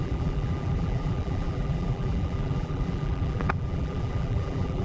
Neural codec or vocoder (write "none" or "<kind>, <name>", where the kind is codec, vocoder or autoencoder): vocoder, BigVGAN v2